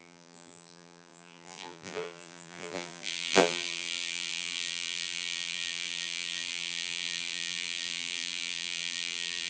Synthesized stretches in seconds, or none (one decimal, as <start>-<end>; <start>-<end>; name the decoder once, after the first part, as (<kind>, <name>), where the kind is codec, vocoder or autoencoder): 0.0-9.5 (vocoder, BigVGAN v2)